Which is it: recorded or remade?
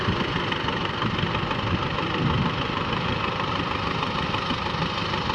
recorded